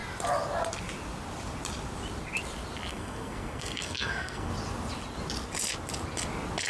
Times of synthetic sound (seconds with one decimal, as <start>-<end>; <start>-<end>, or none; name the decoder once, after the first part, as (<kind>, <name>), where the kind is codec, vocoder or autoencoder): 2.9-4.5 (codec, SNAC)